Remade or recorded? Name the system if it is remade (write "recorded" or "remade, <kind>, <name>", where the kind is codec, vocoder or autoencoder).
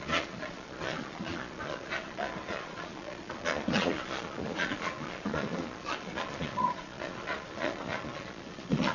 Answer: remade, vocoder, Vocos